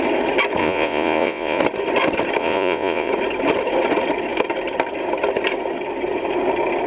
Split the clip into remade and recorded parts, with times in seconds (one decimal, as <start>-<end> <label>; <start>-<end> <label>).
0.0-0.6 recorded; 0.6-1.6 remade; 1.6-2.4 recorded; 2.4-3.1 remade; 3.1-6.9 recorded